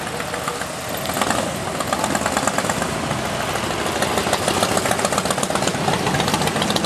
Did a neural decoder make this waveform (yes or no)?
no